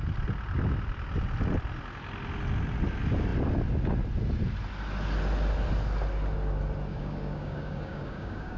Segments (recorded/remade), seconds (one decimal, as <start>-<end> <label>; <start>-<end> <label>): 0.0-6.9 recorded; 6.9-8.6 remade